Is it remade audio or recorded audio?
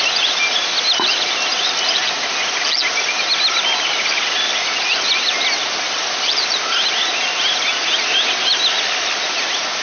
recorded